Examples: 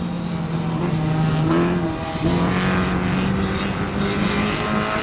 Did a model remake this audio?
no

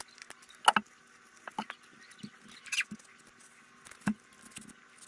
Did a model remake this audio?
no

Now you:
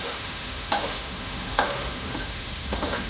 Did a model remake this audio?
yes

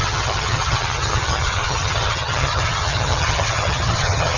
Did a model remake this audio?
yes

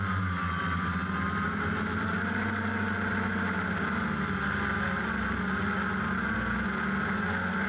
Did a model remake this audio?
no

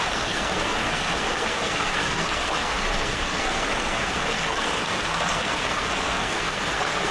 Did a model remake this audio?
yes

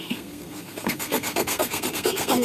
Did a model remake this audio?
yes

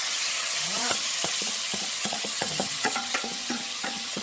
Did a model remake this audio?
yes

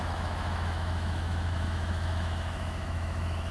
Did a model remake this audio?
yes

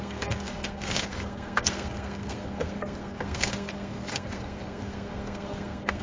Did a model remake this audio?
yes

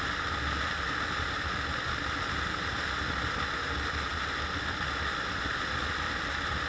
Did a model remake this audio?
no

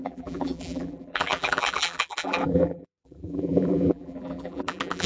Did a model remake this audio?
yes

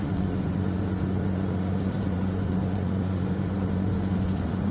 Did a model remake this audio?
yes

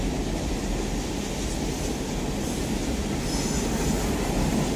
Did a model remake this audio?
no